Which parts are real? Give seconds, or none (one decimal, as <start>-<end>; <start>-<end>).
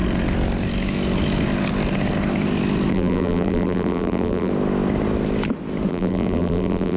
0.0-2.9; 4.5-5.9